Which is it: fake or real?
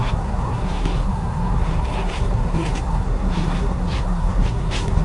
fake